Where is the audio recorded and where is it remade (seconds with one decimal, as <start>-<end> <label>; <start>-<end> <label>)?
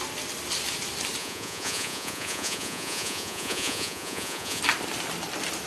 0.0-1.2 recorded; 1.2-4.6 remade; 4.6-5.7 recorded